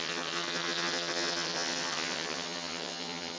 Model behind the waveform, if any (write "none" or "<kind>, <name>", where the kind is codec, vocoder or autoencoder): vocoder, HiFi-GAN